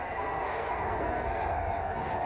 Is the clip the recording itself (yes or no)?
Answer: no